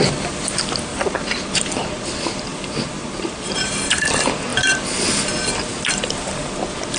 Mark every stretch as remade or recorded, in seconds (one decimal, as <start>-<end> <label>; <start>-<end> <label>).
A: 0.0-0.9 recorded; 0.9-2.0 remade; 2.0-2.5 recorded; 2.5-4.0 remade; 4.0-4.5 recorded; 4.5-5.2 remade; 5.2-7.0 recorded